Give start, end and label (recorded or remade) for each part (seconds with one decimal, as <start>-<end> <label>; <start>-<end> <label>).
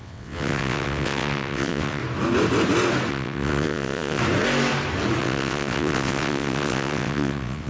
0.0-2.0 remade; 2.0-3.1 recorded; 3.1-4.2 remade; 4.2-5.2 recorded; 5.2-7.7 remade